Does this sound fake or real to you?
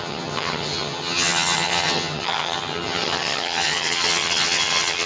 fake